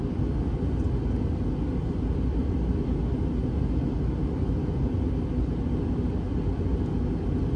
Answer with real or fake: real